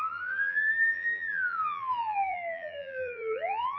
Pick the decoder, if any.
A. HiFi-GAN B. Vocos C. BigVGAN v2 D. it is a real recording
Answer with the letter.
C